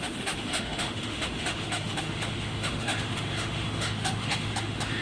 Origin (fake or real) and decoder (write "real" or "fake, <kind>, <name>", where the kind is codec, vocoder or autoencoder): fake, autoencoder, DAC-VAE